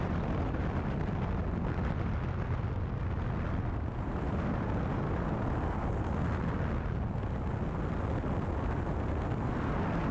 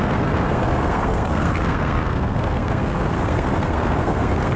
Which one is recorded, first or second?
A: first